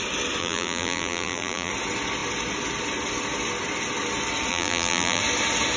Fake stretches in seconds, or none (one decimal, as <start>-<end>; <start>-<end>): 0.4-1.7; 4.5-5.2